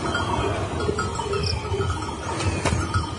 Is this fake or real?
real